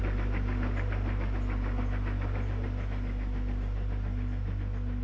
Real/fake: real